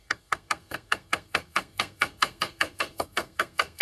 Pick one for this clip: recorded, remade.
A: remade